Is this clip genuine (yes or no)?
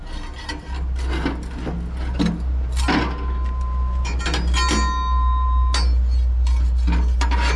yes